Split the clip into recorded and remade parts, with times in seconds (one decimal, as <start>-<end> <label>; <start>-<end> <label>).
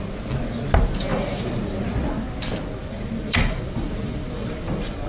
0.0-1.1 recorded; 1.1-1.6 remade; 1.6-2.8 recorded; 2.8-5.1 remade